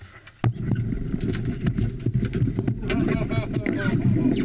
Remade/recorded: recorded